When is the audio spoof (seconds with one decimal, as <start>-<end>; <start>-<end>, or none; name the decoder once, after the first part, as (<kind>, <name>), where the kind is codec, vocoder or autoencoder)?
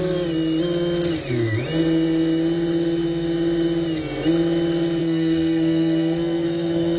5.0-7.0 (codec, SNAC)